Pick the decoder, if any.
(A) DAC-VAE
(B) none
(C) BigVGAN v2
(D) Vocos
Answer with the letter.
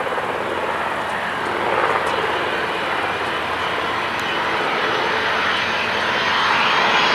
B